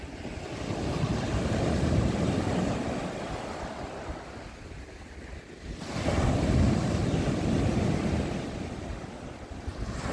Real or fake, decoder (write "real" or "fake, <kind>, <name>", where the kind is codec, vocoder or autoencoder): real